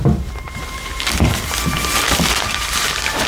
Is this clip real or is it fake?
real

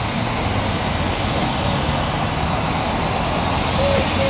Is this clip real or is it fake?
real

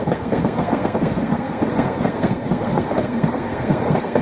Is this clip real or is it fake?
fake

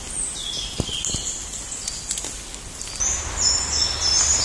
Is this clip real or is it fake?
real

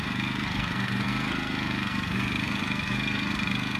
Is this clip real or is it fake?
fake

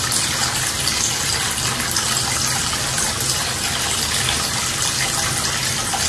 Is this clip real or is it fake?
real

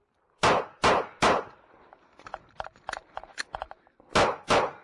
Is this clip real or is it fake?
real